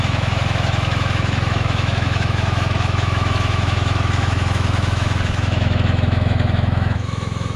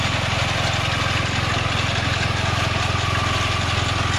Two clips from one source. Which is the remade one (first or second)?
first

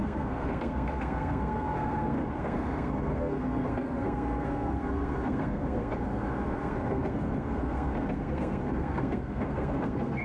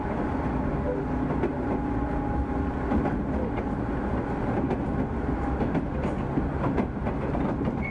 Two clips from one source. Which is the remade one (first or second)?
first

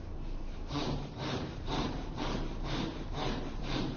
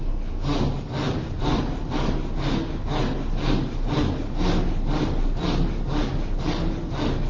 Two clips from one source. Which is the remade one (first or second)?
first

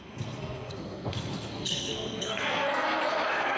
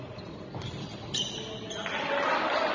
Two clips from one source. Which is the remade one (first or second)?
first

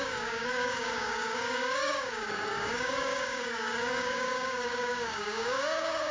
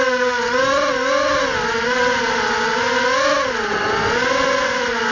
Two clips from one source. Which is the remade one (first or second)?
first